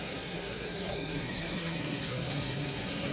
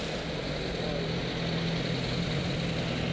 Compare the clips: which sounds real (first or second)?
second